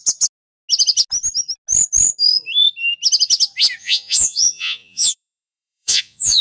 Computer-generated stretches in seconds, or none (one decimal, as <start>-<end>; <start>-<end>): 3.8-6.4